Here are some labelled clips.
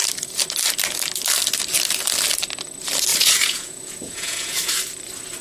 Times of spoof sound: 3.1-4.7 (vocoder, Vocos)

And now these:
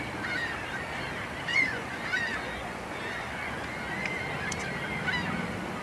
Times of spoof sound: 1.5-4.2 (vocoder, Vocos)

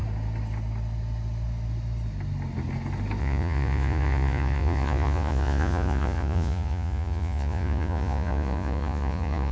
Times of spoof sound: 3.2-9.5 (vocoder, Vocos)